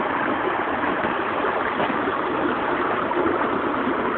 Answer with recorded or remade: recorded